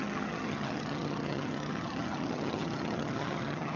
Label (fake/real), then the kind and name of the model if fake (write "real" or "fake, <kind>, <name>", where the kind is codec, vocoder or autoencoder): fake, vocoder, HiFi-GAN